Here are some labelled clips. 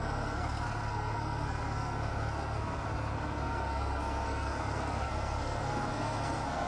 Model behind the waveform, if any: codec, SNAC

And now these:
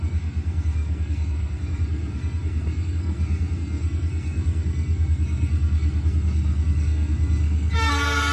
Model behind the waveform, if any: codec, SNAC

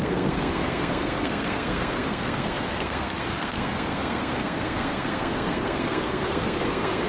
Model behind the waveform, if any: codec, SNAC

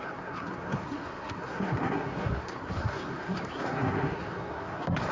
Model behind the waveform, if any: codec, SNAC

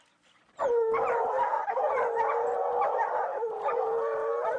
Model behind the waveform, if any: none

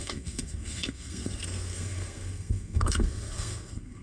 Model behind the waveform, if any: codec, SNAC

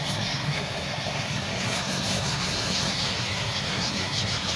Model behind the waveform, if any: codec, SNAC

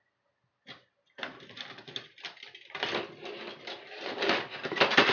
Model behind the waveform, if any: none